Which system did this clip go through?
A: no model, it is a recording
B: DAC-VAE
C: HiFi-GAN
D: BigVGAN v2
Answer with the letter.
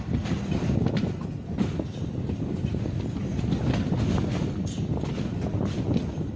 A